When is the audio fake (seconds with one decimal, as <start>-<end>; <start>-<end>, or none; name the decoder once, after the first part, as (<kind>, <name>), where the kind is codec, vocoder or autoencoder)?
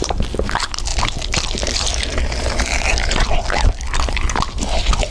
none